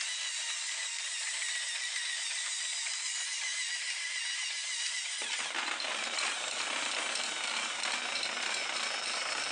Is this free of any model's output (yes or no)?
no